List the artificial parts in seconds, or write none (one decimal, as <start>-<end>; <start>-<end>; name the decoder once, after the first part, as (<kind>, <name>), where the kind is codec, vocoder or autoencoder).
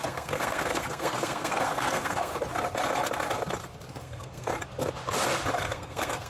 0.0-2.3 (codec, SNAC); 3.9-4.5; 5.5-6.3